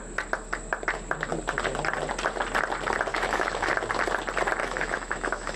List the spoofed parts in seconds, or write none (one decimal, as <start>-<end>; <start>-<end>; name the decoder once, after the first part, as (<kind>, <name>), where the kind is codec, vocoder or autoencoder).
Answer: 3.1-3.7 (autoencoder, DAC-VAE); 4.6-5.6